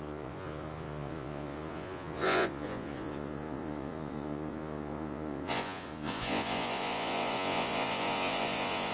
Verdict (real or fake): fake